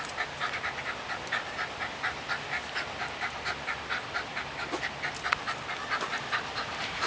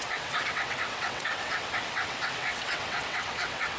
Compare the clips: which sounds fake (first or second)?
second